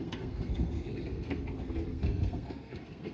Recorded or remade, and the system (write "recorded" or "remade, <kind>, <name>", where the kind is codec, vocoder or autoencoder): remade, codec, SNAC